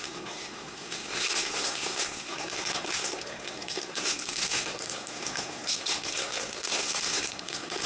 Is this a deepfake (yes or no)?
yes